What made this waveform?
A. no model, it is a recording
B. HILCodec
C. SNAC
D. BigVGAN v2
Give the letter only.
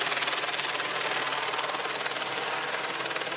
A